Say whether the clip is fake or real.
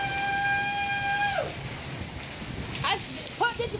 real